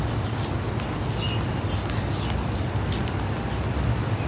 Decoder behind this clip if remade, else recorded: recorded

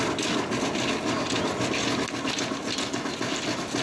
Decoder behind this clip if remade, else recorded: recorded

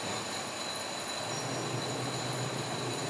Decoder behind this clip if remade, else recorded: recorded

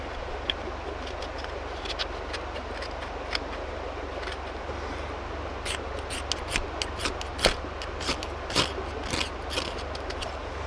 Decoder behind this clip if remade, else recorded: recorded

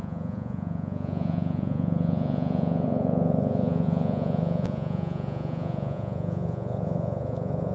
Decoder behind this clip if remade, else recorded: remade, vocoder, Vocos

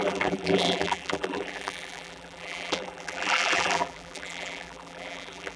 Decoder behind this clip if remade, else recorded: remade, vocoder, BigVGAN v2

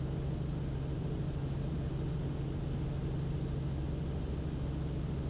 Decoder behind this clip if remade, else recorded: recorded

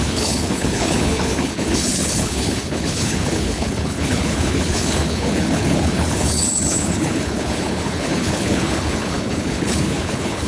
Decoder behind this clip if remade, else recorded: remade, codec, HILCodec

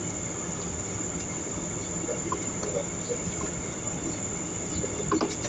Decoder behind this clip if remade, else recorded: recorded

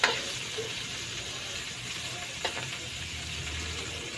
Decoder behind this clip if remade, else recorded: remade, vocoder, BigVGAN v2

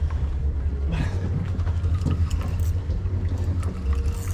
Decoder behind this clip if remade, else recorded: recorded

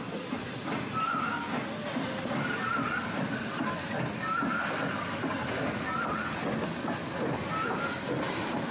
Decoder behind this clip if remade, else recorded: recorded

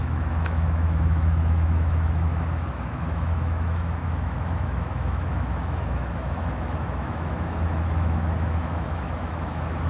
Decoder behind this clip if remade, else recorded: remade, autoencoder, DAC-VAE